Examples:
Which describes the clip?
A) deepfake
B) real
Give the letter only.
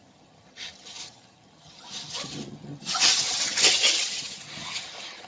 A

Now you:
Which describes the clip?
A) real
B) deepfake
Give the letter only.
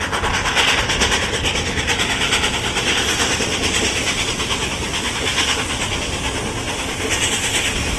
A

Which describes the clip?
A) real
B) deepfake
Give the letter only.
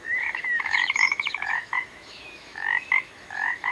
B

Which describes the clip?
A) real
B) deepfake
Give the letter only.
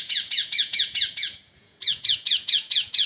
B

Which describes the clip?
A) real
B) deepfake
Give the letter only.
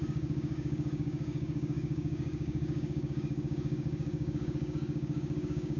B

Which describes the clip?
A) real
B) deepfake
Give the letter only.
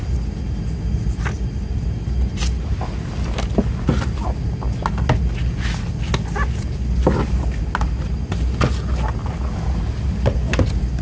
A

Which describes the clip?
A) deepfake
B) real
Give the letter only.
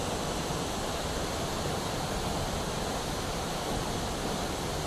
A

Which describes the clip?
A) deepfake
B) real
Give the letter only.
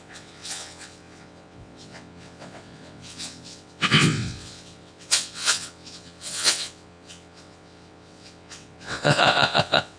A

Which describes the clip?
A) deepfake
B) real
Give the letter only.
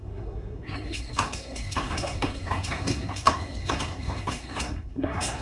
A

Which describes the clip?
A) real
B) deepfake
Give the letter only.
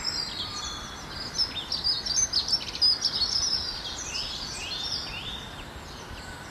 A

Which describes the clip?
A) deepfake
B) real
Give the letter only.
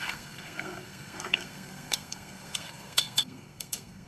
A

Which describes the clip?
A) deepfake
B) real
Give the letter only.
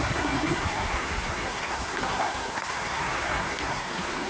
A